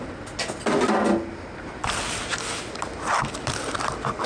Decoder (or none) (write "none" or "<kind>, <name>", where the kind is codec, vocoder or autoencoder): none